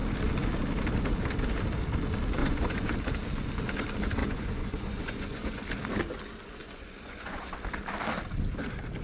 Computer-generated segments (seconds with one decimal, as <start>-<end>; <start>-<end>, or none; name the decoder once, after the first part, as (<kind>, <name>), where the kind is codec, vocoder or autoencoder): 2.4-2.9 (vocoder, Vocos); 4.2-5.6; 6.6-7.4